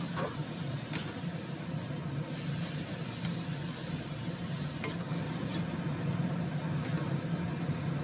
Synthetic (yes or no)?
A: no